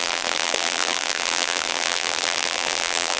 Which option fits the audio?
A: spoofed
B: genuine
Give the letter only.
A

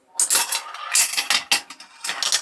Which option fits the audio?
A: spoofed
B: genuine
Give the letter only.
B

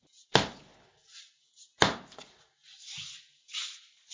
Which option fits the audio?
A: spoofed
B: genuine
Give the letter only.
B